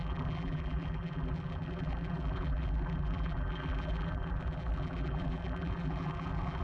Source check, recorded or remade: remade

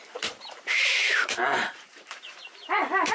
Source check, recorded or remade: remade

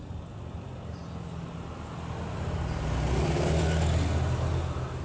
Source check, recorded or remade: recorded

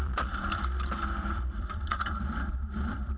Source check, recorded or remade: remade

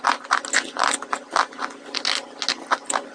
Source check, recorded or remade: recorded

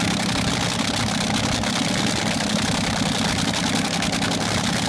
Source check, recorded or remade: recorded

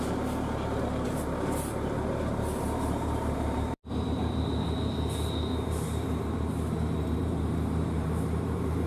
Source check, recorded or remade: remade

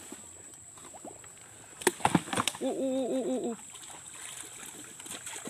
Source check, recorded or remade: recorded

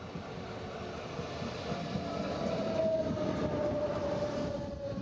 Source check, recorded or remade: recorded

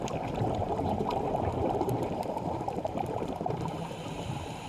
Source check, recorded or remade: remade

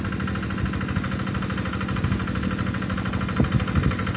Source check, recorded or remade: recorded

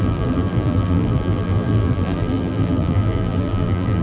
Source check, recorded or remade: remade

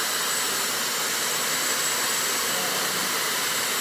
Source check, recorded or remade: remade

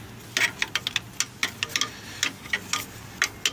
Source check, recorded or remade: recorded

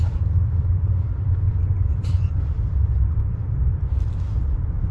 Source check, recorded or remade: remade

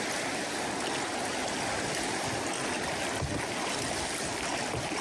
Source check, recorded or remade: recorded